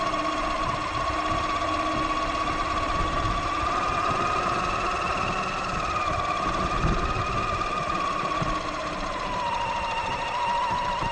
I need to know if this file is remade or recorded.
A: recorded